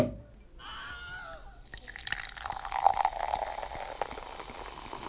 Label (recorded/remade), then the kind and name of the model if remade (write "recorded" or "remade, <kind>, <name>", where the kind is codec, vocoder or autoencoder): recorded